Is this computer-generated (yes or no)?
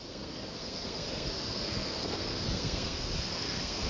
yes